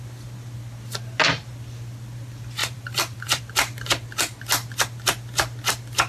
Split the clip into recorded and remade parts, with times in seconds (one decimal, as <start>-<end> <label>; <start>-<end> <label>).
0.0-2.6 recorded; 2.6-3.4 remade; 3.4-6.1 recorded

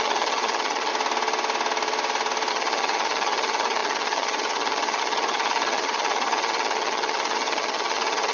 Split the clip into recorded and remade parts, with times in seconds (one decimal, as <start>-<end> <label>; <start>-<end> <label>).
0.0-0.9 remade; 0.9-2.5 recorded; 2.5-8.3 remade

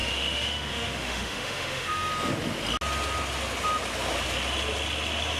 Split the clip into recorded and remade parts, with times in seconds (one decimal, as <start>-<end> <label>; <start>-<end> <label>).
0.0-2.1 remade; 2.1-5.4 recorded

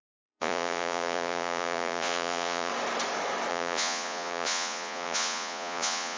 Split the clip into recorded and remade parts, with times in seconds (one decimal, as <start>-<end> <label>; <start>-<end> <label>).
0.0-2.7 remade; 2.7-3.5 recorded; 3.5-6.2 remade

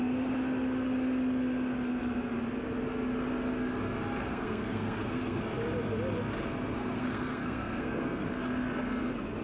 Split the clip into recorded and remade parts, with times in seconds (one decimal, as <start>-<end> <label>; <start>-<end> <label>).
0.0-4.2 recorded; 4.2-5.4 remade; 5.4-6.8 recorded; 6.8-8.3 remade; 8.3-9.4 recorded

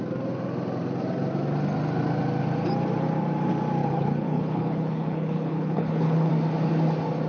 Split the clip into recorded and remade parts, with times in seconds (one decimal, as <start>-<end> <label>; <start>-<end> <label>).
0.0-3.8 recorded; 3.8-6.3 remade; 6.3-7.3 recorded

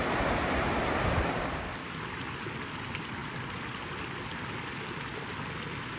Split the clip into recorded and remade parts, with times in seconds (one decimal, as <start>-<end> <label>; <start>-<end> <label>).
0.0-6.0 recorded

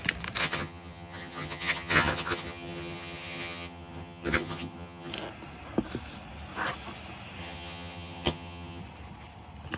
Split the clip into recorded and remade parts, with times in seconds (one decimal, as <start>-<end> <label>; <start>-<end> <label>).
0.0-0.4 recorded; 0.4-5.1 remade; 5.1-7.4 recorded; 7.4-8.8 remade; 8.8-9.8 recorded